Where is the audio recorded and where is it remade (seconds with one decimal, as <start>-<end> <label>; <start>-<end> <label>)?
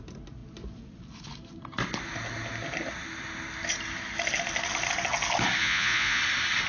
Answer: 0.0-5.6 recorded; 5.6-6.2 remade; 6.2-6.7 recorded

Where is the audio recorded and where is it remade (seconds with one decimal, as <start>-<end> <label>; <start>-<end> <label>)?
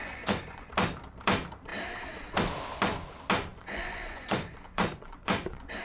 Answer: 0.0-0.7 remade; 0.7-3.5 recorded; 3.5-5.8 remade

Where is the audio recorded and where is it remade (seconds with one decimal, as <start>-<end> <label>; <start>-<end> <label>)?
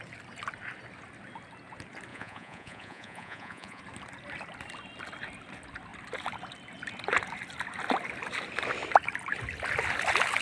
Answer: 0.0-2.1 recorded; 2.1-3.8 remade; 3.8-10.4 recorded